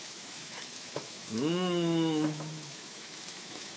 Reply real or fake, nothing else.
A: fake